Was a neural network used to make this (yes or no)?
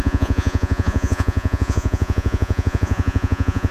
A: yes